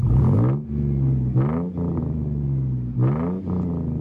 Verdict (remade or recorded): recorded